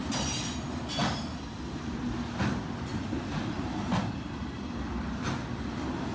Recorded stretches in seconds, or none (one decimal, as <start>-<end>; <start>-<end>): 0.0-6.1